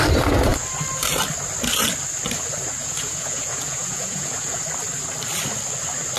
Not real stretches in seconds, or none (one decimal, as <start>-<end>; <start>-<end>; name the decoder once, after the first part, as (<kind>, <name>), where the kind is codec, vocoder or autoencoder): 2.8-4.6 (vocoder, Vocos)